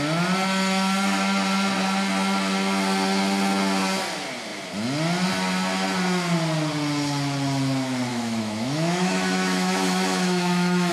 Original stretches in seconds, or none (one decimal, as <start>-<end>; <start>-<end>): 0.0-8.1